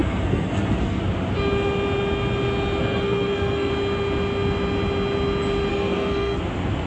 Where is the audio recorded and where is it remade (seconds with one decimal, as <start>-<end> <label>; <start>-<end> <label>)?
0.0-1.0 remade; 1.0-2.8 recorded; 2.8-3.7 remade; 3.7-5.7 recorded; 5.7-6.4 remade; 6.4-6.9 recorded